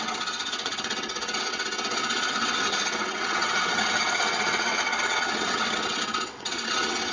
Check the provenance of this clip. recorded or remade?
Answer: remade